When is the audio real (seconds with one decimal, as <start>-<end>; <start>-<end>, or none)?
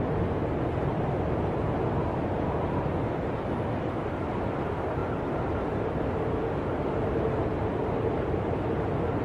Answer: 0.0-9.2